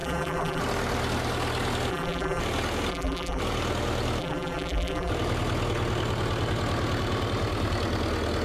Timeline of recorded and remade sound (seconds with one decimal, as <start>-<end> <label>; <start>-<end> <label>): 0.0-0.6 remade; 0.6-1.9 recorded; 1.9-2.4 remade; 2.4-2.9 recorded; 2.9-3.4 remade; 3.4-4.2 recorded; 4.2-5.1 remade; 5.1-8.4 recorded